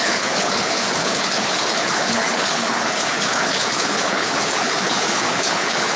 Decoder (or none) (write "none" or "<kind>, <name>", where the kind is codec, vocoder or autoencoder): codec, HILCodec